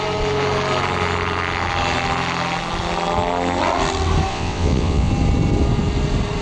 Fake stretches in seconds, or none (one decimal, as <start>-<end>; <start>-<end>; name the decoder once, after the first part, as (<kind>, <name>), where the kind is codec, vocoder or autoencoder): 4.3-5.1 (vocoder, WaveNeXt)